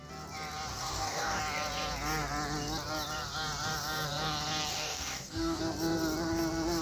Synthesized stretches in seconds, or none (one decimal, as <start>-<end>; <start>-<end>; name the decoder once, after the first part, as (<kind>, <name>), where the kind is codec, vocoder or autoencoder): 0.7-1.4 (codec, DAC); 4.7-5.6